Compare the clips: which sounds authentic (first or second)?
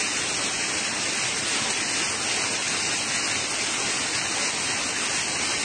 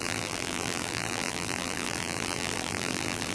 first